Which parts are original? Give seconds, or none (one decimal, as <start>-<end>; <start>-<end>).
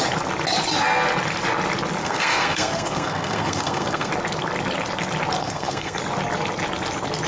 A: 0.0-2.0; 4.1-5.4; 6.0-7.3